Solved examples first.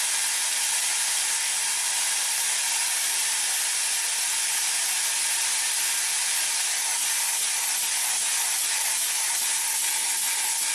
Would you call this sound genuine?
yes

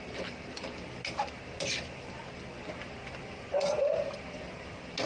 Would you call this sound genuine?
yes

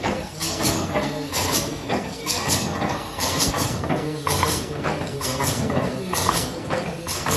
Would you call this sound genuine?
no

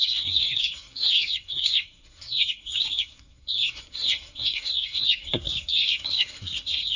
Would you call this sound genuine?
no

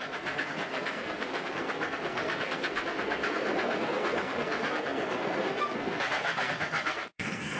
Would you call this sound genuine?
no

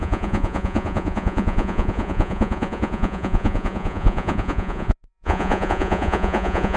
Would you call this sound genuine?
no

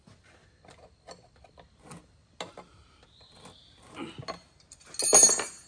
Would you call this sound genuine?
yes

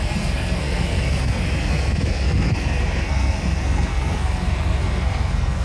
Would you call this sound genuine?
no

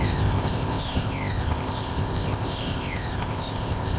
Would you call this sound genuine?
no